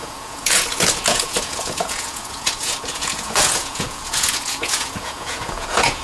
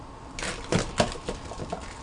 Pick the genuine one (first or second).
second